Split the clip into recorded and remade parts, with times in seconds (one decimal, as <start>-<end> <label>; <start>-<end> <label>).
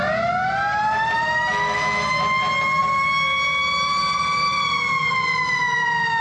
0.0-6.2 recorded